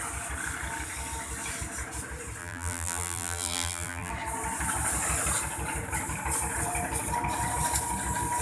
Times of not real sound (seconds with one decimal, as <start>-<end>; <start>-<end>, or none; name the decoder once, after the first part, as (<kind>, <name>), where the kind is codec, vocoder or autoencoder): 2.4-4.1 (vocoder, BigVGAN v2)